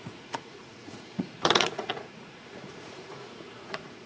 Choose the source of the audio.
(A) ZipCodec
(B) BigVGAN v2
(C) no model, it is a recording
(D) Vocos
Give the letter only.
D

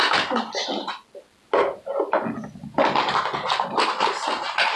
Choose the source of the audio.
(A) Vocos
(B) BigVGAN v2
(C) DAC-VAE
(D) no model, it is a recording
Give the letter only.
D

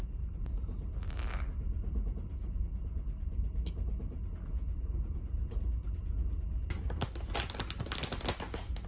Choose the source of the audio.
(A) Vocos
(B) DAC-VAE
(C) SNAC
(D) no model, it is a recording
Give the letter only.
D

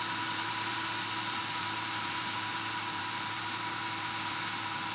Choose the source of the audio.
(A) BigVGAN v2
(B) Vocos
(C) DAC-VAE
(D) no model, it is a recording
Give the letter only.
A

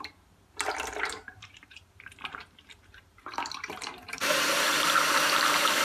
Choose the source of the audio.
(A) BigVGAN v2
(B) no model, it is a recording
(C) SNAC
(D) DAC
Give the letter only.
A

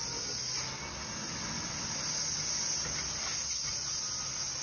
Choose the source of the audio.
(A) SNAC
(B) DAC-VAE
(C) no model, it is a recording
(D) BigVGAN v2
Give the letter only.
C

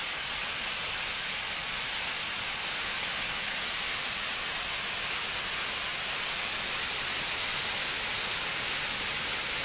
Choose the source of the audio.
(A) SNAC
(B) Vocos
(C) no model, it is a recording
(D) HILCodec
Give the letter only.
C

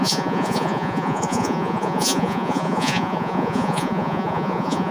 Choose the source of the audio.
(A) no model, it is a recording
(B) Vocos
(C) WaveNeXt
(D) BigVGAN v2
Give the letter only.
B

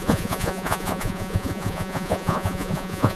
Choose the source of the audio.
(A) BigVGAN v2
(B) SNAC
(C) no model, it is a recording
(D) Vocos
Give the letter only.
D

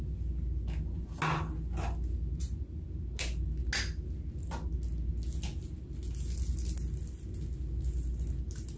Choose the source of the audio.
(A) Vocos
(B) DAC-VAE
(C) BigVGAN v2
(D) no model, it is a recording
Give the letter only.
D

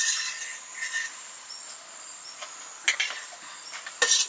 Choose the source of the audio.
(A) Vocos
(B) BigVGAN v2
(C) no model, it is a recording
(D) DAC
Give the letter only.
C